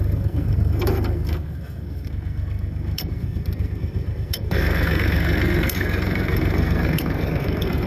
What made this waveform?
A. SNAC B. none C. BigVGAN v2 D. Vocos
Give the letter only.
A